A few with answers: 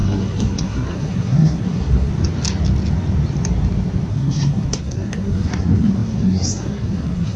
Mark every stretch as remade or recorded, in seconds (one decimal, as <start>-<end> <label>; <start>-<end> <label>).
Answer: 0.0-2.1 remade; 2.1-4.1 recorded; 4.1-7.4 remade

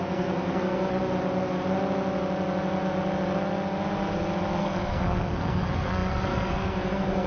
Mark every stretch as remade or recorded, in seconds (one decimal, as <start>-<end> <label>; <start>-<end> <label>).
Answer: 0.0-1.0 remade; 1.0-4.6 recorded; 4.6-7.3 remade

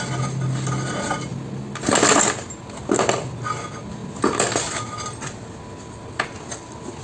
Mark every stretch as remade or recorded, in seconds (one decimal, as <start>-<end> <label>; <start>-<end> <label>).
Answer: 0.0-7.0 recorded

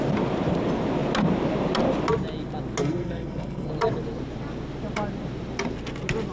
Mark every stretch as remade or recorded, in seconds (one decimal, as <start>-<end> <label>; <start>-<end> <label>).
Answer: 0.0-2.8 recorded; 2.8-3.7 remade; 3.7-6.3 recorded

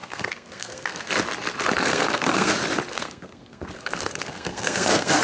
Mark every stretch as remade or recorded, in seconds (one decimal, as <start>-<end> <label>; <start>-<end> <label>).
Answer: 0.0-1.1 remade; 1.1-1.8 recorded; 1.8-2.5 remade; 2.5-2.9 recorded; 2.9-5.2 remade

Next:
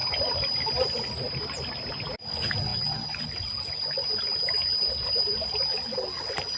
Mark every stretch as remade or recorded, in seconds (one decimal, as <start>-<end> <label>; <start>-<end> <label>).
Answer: 0.0-6.6 recorded